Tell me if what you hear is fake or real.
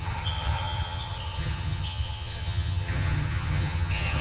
fake